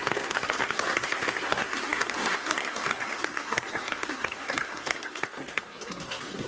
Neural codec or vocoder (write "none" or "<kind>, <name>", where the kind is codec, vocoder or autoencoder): codec, SNAC